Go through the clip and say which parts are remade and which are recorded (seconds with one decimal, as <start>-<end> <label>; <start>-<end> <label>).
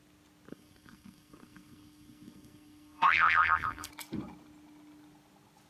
0.0-0.5 recorded; 0.5-3.9 remade; 3.9-5.7 recorded